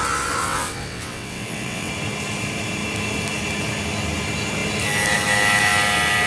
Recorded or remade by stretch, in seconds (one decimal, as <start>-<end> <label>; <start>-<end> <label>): 0.0-0.4 recorded; 0.4-1.9 remade; 1.9-6.3 recorded